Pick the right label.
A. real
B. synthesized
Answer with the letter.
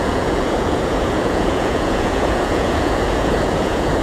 B